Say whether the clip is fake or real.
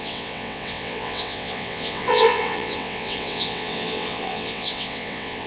fake